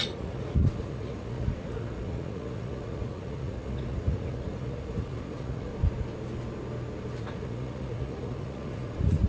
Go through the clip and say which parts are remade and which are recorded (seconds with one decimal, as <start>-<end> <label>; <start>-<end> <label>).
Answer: 0.0-5.7 remade; 5.7-7.2 recorded; 7.2-9.3 remade